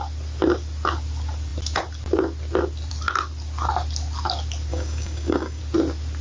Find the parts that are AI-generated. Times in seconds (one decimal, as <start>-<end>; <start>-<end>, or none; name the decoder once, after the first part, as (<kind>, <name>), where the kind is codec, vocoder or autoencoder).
4.7-5.6 (codec, DAC)